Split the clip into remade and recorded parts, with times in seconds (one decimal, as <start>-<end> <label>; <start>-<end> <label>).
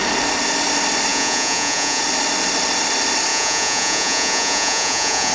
0.0-1.1 recorded; 1.1-2.0 remade; 2.0-3.3 recorded; 3.3-5.3 remade